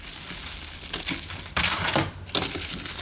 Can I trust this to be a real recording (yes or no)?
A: yes